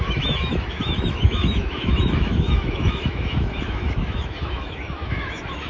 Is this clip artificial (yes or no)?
yes